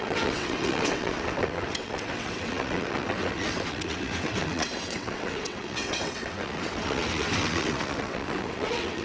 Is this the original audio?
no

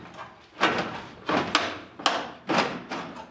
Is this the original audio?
yes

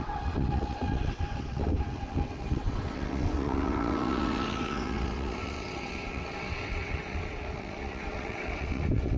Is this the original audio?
no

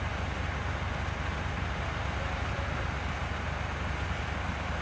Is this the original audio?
yes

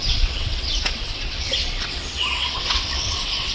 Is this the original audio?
no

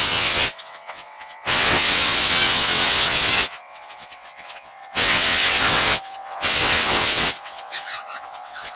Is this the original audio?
no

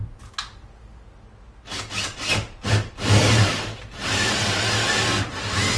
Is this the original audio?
yes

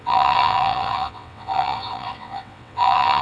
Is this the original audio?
no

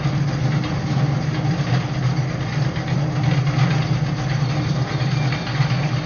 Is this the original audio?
yes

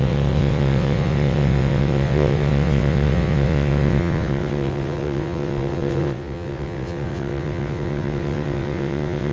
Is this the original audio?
no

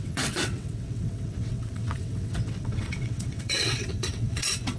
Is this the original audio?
no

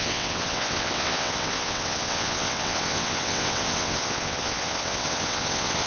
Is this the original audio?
no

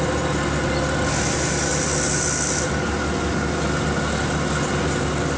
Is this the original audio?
yes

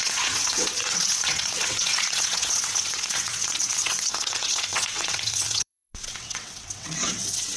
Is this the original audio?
no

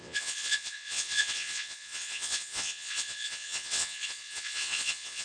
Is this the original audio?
no